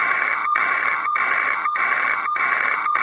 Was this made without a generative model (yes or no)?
no